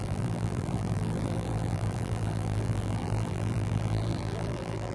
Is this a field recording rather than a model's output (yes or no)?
no